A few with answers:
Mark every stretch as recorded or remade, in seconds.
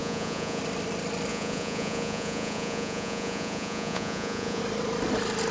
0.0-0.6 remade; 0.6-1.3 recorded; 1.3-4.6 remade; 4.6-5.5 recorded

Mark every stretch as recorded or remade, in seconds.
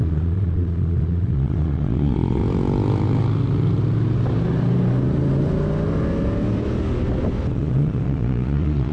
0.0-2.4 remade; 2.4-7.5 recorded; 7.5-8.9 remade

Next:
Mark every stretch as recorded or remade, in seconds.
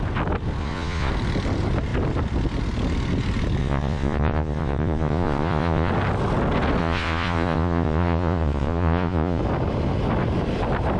0.0-0.6 recorded; 0.6-1.1 remade; 1.1-3.6 recorded; 3.6-5.9 remade; 5.9-6.8 recorded; 6.8-9.4 remade; 9.4-11.0 recorded